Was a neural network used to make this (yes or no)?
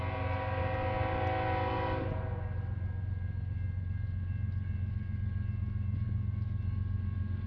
no